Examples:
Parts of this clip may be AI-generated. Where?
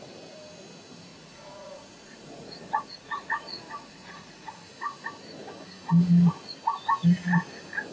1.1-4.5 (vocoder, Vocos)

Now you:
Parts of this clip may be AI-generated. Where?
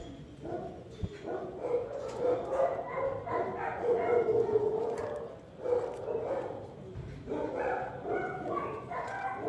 0.0-2.7 (vocoder, Vocos); 3.7-5.0; 7.5-9.5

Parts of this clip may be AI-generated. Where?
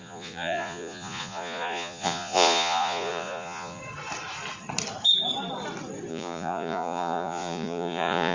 0.0-3.8 (vocoder, Vocos); 6.1-8.3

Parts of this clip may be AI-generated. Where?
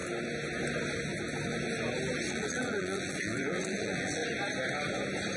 2.3-4.2 (vocoder, Vocos)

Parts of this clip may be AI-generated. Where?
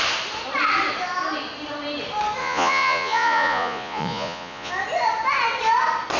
2.4-4.7 (vocoder, Vocos)